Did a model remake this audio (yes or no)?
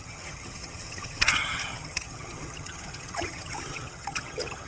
yes